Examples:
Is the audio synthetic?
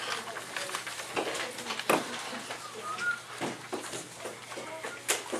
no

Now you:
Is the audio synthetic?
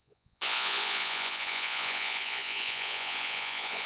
yes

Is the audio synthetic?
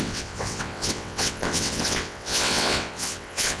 yes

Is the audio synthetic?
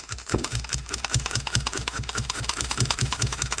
yes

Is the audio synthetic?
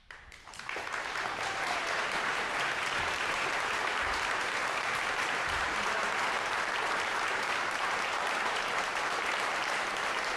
yes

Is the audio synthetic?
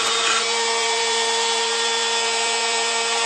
yes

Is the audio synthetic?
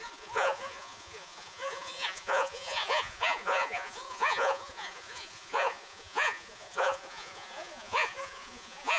yes